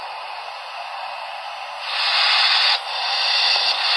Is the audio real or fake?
real